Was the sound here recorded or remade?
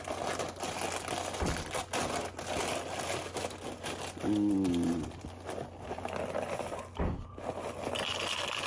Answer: recorded